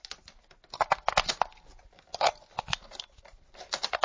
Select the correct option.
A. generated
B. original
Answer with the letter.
B